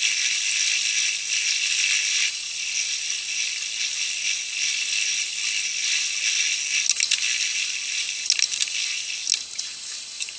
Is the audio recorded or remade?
recorded